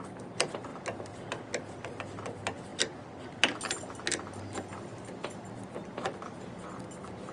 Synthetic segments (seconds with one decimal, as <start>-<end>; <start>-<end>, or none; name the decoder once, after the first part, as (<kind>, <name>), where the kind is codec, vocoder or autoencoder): none